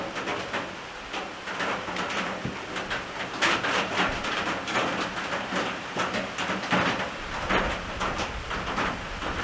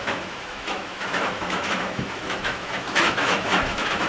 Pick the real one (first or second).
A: first